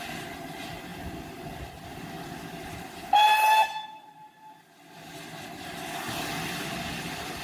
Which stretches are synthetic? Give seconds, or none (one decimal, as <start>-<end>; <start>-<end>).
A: none